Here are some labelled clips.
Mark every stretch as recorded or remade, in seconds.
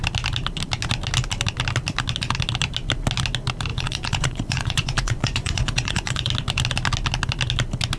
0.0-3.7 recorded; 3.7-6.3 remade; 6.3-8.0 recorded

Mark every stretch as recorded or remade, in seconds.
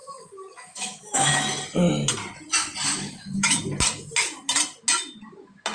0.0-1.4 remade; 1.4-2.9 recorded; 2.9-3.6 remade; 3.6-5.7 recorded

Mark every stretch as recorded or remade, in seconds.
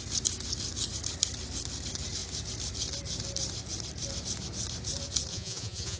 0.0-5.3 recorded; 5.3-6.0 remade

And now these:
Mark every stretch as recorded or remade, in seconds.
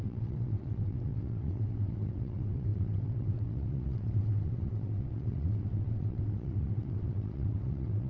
0.0-8.1 remade